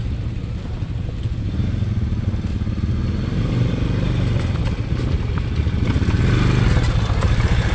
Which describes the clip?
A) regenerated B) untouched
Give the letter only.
B